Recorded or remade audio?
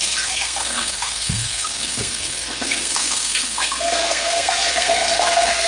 remade